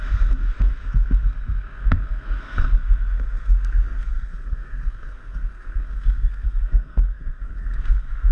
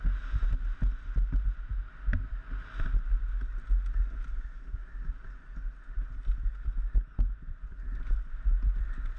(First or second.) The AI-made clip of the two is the first